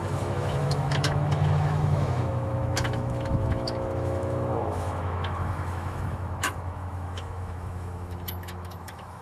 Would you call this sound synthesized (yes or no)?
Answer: yes